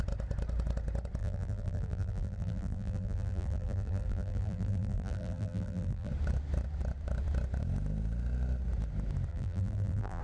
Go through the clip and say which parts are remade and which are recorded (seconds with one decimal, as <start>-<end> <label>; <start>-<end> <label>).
0.0-1.2 recorded; 1.2-6.1 remade; 6.1-9.3 recorded; 9.3-10.2 remade